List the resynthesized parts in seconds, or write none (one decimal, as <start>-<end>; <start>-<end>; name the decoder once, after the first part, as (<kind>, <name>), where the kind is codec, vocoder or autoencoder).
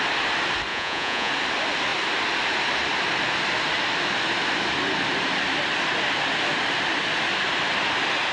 0.7-1.3 (vocoder, Vocos)